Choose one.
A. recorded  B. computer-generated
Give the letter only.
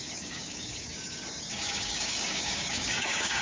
B